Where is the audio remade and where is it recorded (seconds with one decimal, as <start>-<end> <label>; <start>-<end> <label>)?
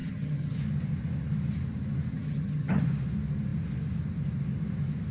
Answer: 0.0-0.6 remade; 0.6-2.1 recorded; 2.1-2.8 remade; 2.8-5.1 recorded